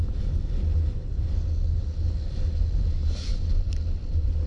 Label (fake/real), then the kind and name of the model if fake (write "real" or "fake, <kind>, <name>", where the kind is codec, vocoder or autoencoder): real